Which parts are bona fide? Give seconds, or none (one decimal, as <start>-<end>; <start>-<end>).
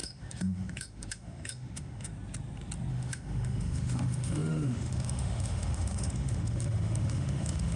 2.1-2.9